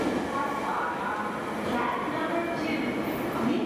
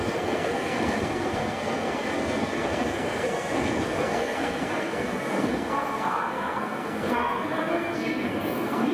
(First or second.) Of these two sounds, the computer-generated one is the second